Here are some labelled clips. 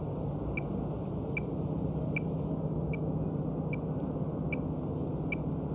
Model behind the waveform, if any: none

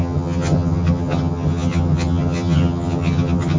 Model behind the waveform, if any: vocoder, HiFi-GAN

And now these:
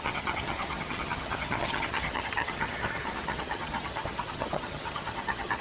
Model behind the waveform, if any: vocoder, HiFi-GAN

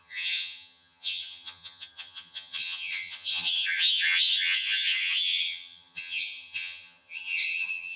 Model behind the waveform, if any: vocoder, HiFi-GAN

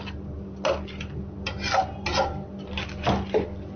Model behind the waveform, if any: none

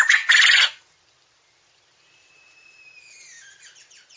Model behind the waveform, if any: none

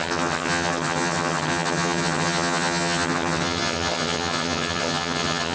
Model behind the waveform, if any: vocoder, HiFi-GAN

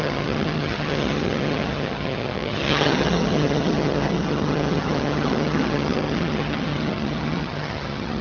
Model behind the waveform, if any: vocoder, HiFi-GAN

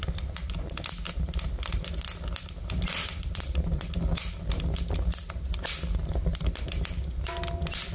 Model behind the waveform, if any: none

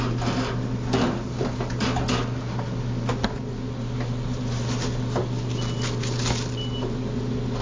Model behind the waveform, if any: none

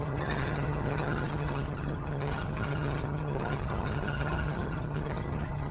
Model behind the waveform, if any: vocoder, HiFi-GAN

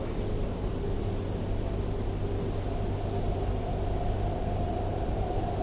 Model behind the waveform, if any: none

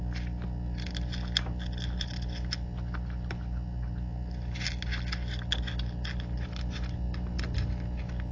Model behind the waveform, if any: none